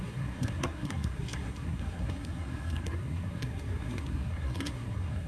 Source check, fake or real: fake